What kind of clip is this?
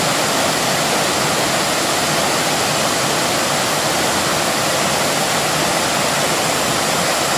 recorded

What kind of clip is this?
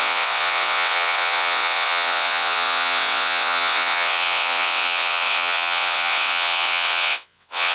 remade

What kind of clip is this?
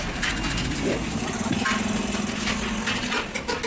recorded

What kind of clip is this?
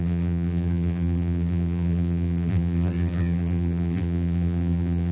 remade